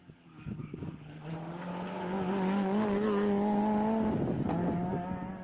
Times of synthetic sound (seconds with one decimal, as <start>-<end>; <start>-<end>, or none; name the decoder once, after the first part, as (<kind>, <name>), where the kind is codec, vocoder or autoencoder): 0.0-1.7 (codec, DAC); 4.9-5.4